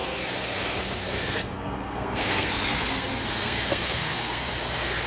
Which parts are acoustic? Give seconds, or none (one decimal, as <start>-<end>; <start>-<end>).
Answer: none